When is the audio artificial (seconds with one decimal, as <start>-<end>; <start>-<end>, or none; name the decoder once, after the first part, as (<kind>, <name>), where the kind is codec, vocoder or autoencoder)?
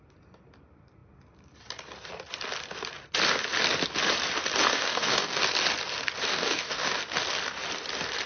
4.7-5.4 (codec, DAC); 6.3-7.0